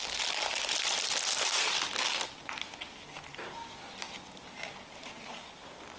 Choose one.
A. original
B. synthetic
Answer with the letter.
B